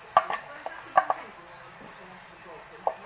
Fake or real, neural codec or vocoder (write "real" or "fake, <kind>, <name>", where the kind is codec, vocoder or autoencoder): real